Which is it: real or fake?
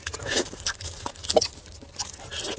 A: real